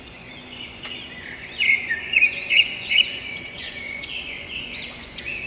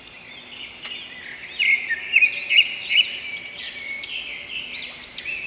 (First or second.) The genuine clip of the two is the second